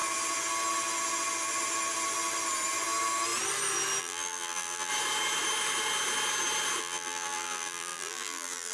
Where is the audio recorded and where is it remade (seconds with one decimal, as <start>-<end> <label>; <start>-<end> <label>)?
0.0-4.0 recorded; 4.0-4.9 remade; 4.9-6.8 recorded; 6.8-8.7 remade